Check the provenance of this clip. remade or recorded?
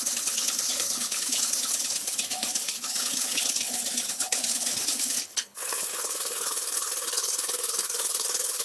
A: remade